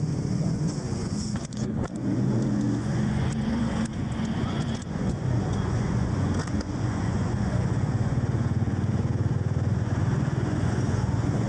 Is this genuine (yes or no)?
no